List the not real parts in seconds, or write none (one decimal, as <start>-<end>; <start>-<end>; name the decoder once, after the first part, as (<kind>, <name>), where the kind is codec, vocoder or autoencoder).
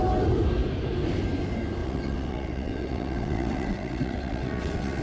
1.8-5.0 (vocoder, WaveNeXt)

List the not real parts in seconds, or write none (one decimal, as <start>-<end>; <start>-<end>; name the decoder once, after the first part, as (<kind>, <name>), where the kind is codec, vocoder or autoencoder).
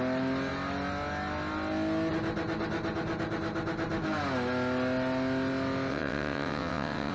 5.9-7.1 (vocoder, WaveNeXt)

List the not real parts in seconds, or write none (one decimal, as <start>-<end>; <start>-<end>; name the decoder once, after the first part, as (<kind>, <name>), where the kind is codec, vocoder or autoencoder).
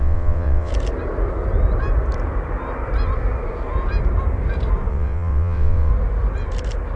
0.0-0.7 (vocoder, WaveNeXt); 4.9-5.9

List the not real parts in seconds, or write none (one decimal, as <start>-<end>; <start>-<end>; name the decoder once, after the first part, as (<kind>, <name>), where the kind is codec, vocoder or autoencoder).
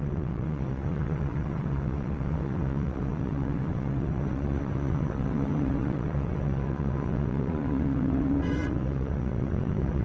0.0-10.0 (vocoder, WaveNeXt)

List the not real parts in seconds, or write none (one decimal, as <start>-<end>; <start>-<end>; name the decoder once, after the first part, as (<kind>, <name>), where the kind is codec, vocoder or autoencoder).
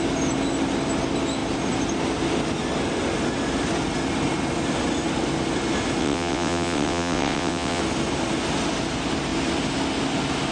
6.0-7.8 (vocoder, WaveNeXt)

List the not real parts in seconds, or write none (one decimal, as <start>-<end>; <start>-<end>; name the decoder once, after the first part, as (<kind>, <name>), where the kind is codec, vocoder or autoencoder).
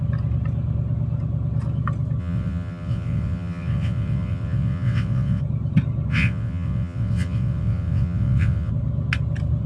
2.2-5.4 (vocoder, WaveNeXt); 6.1-8.7